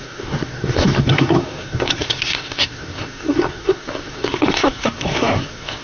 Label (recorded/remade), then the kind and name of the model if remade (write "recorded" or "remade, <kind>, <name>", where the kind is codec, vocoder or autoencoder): remade, codec, SNAC